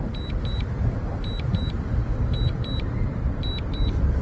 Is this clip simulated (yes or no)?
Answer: no